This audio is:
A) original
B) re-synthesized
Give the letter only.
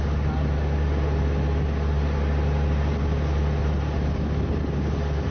A